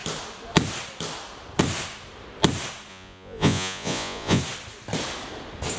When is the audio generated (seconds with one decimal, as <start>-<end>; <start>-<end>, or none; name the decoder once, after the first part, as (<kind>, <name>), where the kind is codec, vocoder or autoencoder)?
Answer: 2.9-4.4 (vocoder, Vocos)